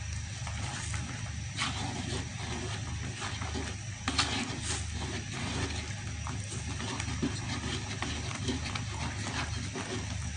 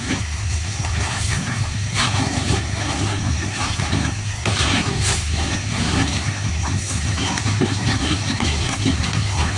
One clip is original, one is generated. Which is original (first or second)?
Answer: first